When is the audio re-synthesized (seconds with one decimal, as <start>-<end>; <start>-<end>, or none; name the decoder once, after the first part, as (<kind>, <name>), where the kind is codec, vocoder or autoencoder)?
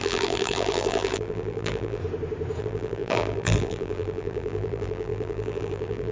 0.0-2.0 (vocoder, BigVGAN v2); 2.6-6.1